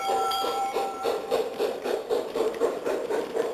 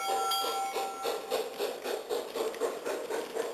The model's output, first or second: first